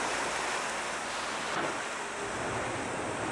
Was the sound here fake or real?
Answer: real